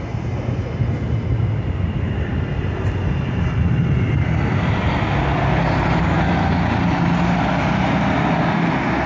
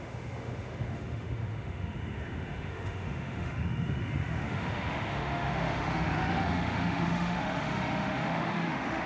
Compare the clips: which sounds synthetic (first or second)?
second